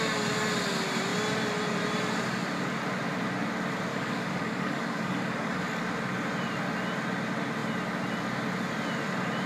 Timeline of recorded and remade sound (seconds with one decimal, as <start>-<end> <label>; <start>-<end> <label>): 0.0-3.9 recorded; 3.9-5.8 remade; 5.8-9.5 recorded